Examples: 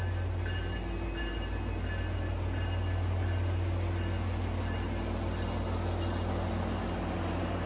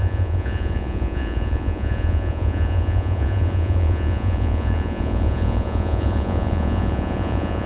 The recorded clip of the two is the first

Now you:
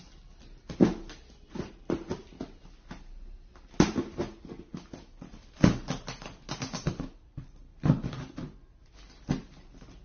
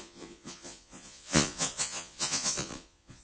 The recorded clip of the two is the first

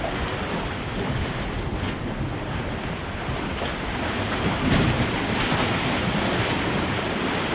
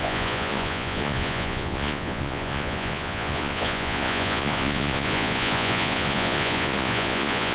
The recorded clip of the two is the first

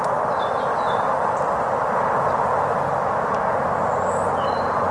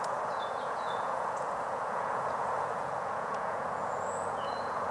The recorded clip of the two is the first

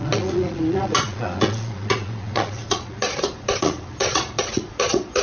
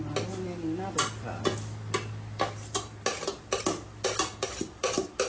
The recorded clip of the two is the second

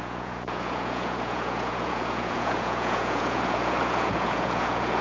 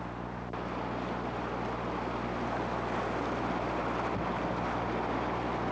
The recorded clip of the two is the second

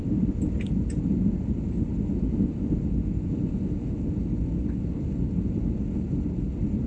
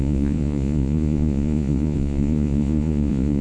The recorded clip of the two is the first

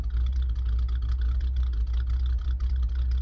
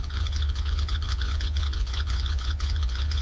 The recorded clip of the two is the first